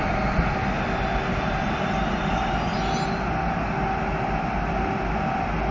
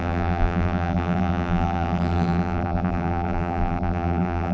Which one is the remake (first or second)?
second